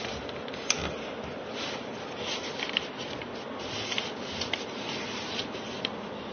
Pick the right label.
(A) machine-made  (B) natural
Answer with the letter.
B